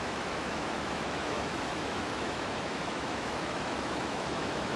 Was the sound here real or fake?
fake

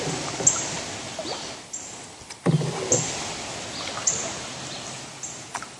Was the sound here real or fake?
real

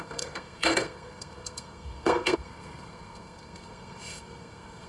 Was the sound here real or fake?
fake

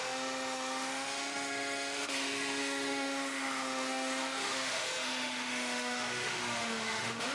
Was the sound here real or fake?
fake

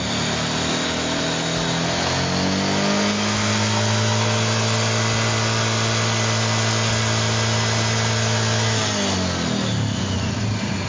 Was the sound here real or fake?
real